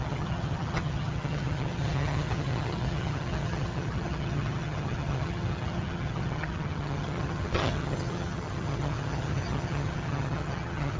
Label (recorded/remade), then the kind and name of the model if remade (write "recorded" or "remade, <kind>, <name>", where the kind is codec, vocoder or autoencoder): remade, vocoder, HiFi-GAN